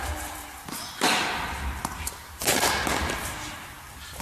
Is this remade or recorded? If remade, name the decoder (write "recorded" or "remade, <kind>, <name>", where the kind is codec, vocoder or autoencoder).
recorded